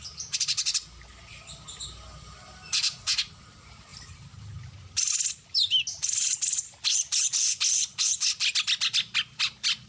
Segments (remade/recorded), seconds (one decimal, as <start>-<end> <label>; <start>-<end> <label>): 0.0-9.9 recorded